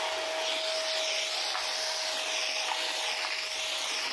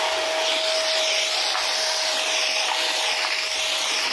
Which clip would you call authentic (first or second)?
first